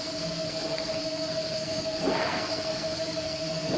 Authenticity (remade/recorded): remade